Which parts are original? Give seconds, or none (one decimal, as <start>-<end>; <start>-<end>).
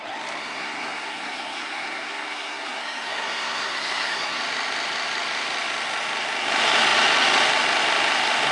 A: 0.0-0.4; 4.4-8.5